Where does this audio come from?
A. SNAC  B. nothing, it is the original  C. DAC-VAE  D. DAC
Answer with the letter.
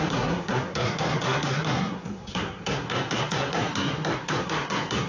A